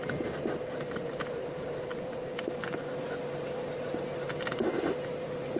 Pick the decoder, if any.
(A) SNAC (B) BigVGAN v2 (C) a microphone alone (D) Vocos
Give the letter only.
C